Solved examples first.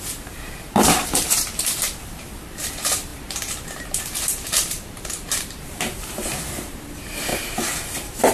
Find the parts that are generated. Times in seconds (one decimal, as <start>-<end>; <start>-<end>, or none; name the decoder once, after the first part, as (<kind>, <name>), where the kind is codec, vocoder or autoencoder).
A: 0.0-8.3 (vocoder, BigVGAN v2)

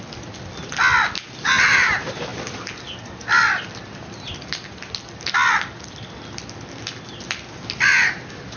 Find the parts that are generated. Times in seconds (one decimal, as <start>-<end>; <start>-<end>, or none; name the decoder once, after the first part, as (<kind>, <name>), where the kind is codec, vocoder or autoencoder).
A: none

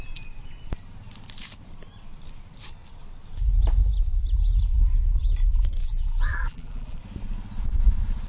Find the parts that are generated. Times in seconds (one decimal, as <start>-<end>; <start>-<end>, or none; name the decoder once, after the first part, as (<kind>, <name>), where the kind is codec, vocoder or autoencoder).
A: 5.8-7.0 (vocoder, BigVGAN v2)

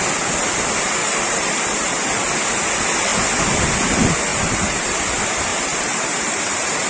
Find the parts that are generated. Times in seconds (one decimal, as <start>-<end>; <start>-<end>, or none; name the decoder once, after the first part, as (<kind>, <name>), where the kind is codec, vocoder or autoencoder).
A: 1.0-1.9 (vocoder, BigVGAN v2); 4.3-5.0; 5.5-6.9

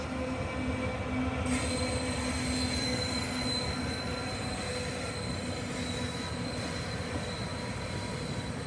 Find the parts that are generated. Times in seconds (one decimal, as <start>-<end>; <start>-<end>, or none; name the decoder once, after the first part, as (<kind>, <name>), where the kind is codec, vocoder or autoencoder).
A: 7.5-8.7 (vocoder, BigVGAN v2)